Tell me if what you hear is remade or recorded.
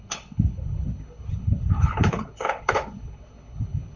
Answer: remade